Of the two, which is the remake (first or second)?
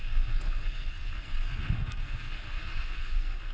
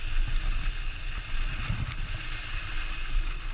first